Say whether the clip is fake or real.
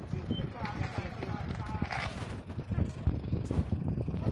real